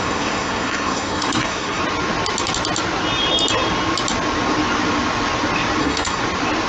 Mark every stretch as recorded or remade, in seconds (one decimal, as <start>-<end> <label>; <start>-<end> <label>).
0.0-1.8 remade; 1.8-5.8 recorded; 5.8-6.2 remade; 6.2-6.7 recorded